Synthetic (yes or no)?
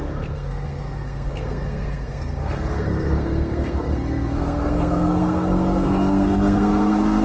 yes